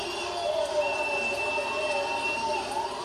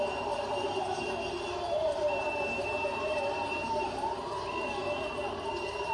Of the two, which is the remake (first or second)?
second